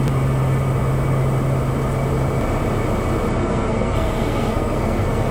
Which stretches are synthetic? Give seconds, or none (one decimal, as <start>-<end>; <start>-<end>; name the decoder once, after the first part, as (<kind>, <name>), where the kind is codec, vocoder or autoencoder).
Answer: 3.4-5.3 (codec, SNAC)